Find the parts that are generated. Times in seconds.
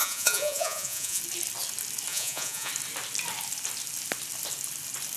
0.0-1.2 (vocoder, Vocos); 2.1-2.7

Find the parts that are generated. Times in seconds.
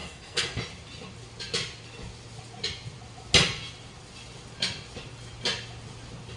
0.0-0.6 (codec, SNAC)